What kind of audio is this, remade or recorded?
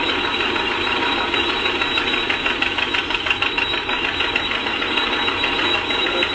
remade